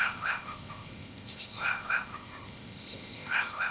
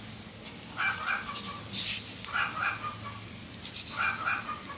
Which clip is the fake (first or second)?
first